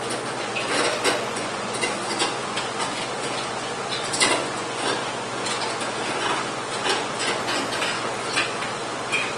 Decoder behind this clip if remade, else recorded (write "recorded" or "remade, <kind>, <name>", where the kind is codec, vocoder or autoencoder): remade, vocoder, Vocos